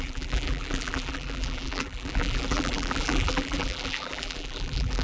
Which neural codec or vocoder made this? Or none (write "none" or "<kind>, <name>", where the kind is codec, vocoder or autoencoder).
vocoder, BigVGAN v2